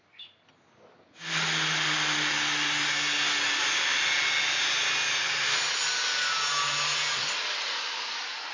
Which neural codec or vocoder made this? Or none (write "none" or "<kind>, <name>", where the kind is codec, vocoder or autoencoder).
none